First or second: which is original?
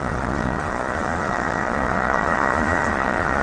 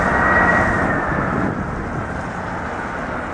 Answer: second